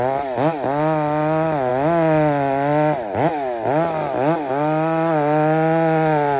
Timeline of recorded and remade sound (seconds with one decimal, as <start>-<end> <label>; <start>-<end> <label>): 0.0-6.4 recorded

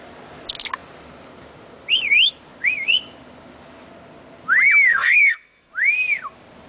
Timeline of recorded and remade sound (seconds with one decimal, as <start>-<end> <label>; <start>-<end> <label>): 0.0-4.9 recorded; 4.9-5.7 remade; 5.7-6.7 recorded

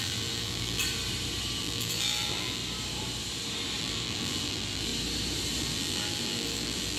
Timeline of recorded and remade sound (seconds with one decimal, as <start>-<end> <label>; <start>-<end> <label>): 0.0-0.8 remade; 0.8-1.6 recorded; 1.6-2.6 remade; 2.6-3.8 recorded; 3.8-4.9 remade; 4.9-5.6 recorded; 5.6-7.0 remade

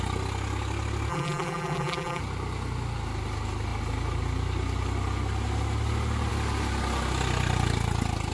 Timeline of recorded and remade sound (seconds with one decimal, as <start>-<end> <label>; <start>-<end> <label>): 0.0-1.1 recorded; 1.1-2.2 remade; 2.2-8.3 recorded

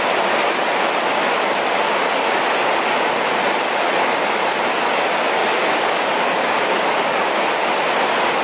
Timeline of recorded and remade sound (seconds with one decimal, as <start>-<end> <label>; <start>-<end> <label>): 0.0-5.4 recorded; 5.4-7.4 remade; 7.4-8.4 recorded

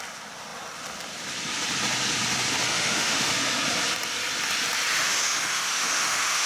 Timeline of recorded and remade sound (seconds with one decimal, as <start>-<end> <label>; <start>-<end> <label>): 0.0-2.7 recorded; 2.7-3.3 remade; 3.3-4.9 recorded; 4.9-6.5 remade